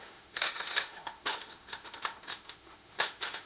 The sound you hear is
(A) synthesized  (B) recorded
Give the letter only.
A